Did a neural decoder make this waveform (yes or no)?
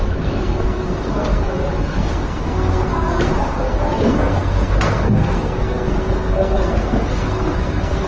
yes